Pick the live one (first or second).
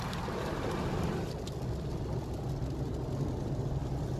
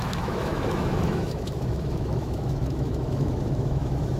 first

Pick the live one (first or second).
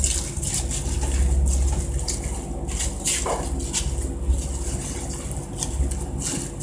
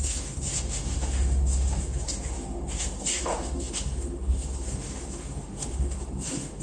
first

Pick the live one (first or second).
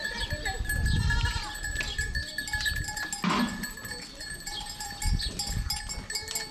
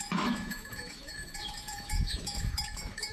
first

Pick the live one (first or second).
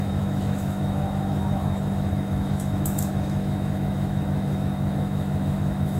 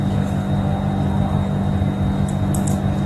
second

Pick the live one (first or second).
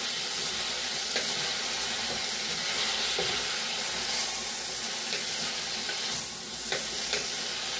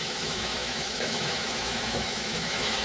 first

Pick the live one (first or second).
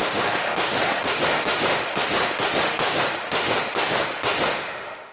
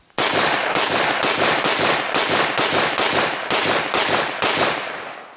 second